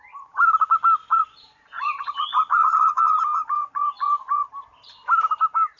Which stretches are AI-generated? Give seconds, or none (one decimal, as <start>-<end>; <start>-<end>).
1.0-4.5